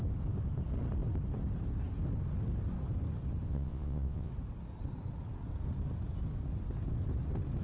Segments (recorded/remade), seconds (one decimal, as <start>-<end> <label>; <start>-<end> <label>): 0.0-3.5 recorded; 3.5-4.3 remade; 4.3-7.6 recorded